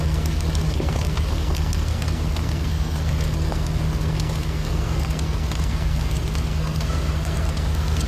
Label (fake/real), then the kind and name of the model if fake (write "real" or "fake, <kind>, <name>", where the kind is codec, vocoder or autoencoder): fake, codec, SNAC